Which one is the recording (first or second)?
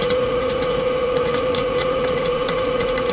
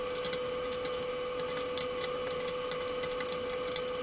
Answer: second